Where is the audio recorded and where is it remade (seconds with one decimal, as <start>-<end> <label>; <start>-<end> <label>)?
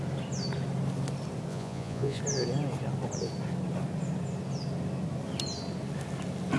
0.0-1.5 recorded; 1.5-2.2 remade; 2.2-6.6 recorded